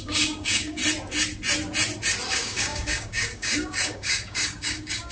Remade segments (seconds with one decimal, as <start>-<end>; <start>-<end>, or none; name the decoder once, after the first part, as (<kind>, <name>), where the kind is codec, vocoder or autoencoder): 0.0-0.8 (codec, DAC); 2.3-5.1